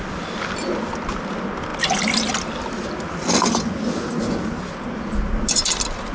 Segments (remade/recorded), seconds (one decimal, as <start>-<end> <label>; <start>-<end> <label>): 0.0-6.1 recorded